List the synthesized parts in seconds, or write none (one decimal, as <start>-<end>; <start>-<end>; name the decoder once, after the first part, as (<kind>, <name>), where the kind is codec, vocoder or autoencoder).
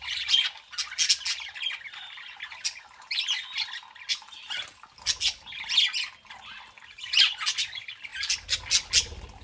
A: none